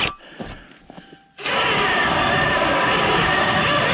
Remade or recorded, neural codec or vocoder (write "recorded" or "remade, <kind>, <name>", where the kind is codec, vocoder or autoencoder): recorded